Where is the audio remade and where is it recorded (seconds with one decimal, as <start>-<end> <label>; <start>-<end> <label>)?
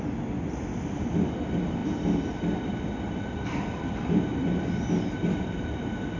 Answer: 0.0-6.2 recorded